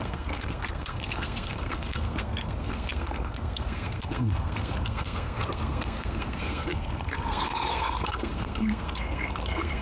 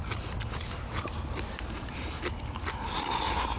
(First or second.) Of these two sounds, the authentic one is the second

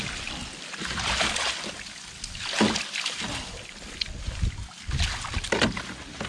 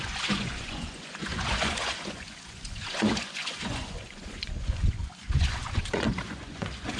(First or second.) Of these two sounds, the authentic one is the first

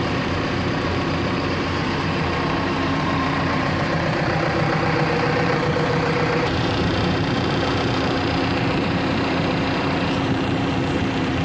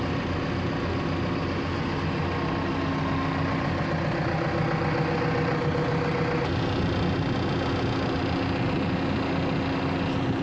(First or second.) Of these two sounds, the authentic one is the second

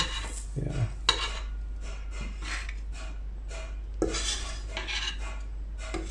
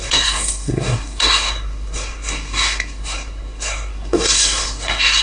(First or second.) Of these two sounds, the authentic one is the first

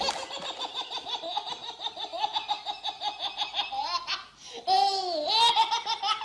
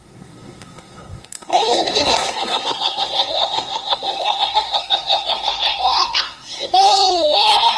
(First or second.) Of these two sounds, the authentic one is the first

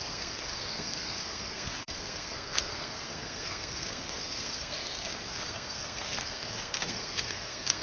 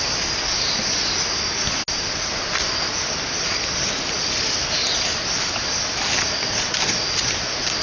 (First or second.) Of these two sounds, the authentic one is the second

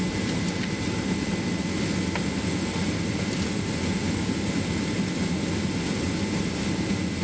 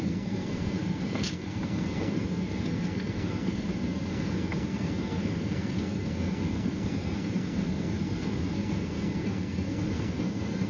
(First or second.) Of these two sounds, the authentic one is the first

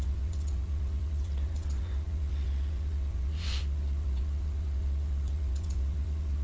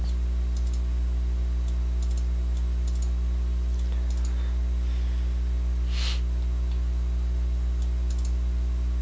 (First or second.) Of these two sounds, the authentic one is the second